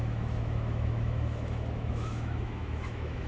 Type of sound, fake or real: fake